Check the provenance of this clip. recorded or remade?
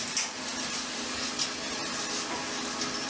recorded